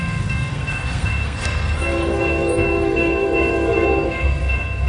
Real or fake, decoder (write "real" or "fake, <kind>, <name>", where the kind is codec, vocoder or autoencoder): fake, codec, SNAC